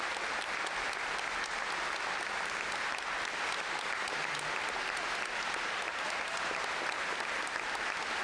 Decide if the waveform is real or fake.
real